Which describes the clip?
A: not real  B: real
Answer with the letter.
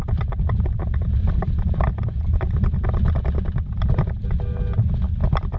B